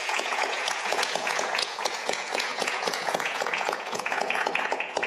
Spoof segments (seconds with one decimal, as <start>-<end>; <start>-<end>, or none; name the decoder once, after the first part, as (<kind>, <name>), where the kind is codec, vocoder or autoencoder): 0.0-5.1 (vocoder, Vocos)